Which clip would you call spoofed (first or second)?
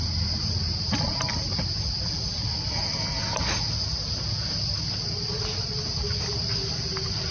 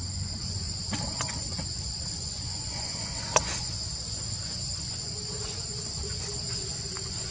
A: second